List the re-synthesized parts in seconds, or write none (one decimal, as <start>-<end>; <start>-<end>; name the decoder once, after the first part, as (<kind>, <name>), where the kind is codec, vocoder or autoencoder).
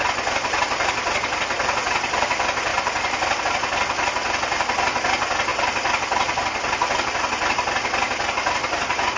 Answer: 2.7-3.4 (vocoder, BigVGAN v2)